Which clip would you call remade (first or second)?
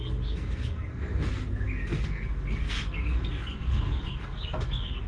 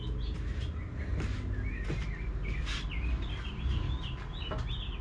first